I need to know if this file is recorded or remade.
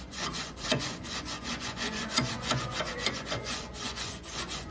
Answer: remade